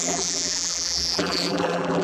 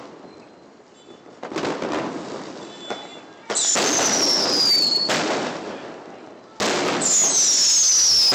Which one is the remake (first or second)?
first